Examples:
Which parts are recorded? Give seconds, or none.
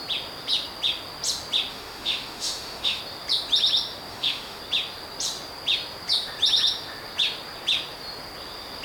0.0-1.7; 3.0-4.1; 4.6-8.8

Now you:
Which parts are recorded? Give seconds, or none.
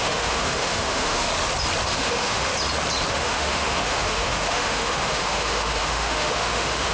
1.3-1.8; 2.5-3.1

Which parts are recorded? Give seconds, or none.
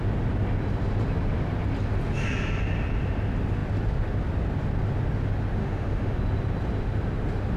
0.0-5.6; 6.2-7.6